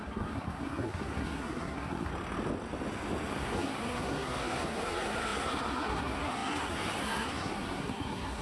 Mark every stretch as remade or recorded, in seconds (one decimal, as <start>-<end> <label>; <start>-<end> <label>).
0.0-2.1 remade; 2.1-3.3 recorded; 3.3-8.4 remade